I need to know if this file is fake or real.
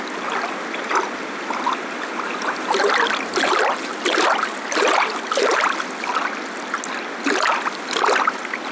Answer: real